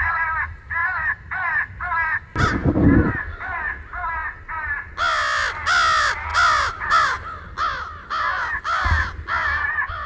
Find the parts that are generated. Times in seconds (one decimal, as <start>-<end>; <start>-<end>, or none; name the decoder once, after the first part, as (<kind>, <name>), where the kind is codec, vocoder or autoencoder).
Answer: none